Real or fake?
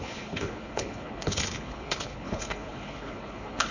fake